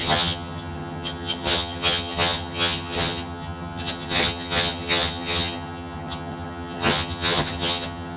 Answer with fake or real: fake